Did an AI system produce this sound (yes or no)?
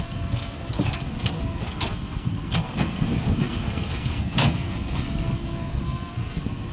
yes